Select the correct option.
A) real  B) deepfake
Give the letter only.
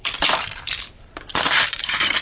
B